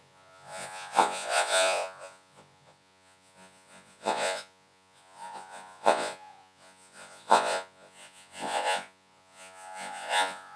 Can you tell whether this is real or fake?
fake